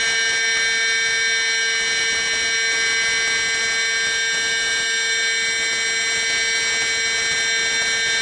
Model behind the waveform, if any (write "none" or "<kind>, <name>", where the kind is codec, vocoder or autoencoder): none